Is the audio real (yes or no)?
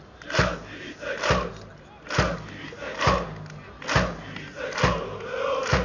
yes